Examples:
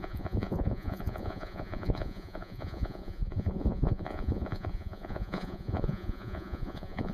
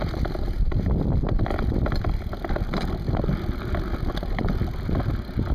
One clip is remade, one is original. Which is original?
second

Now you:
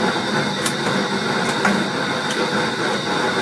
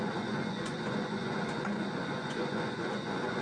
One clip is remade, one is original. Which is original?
first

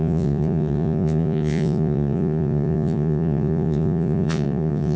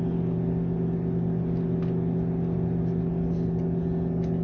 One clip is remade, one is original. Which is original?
second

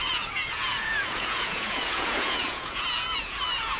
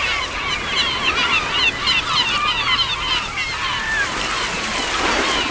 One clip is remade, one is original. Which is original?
second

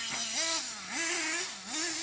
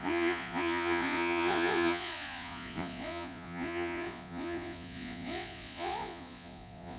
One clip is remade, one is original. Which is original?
first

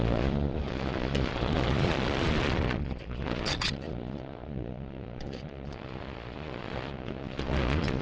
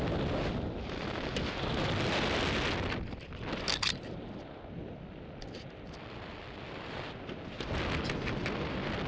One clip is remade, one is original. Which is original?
second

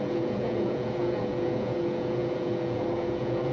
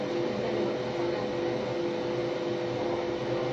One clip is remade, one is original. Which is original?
second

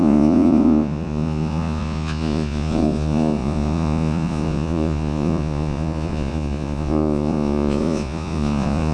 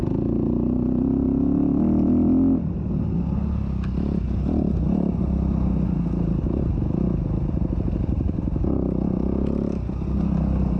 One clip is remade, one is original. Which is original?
second